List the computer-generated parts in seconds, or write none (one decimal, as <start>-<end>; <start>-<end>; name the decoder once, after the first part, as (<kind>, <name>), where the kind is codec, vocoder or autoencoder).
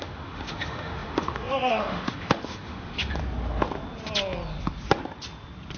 0.0-3.2 (autoencoder, DAC-VAE)